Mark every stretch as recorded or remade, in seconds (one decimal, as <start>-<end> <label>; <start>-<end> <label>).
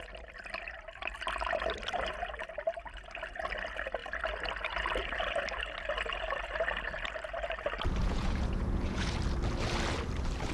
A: 0.0-8.0 recorded; 8.0-9.2 remade; 9.2-10.5 recorded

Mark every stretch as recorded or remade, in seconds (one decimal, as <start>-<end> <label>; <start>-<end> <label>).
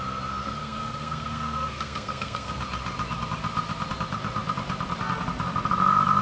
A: 0.0-0.4 recorded; 0.4-2.6 remade; 2.6-6.2 recorded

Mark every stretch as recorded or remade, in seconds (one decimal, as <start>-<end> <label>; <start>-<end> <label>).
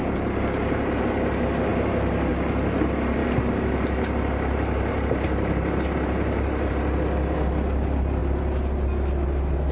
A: 0.0-1.0 remade; 1.0-3.2 recorded; 3.2-6.7 remade; 6.7-9.7 recorded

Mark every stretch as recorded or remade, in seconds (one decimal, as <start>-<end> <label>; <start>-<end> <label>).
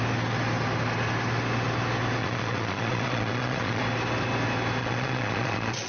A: 0.0-2.2 recorded; 2.2-3.8 remade; 3.8-4.8 recorded; 4.8-5.9 remade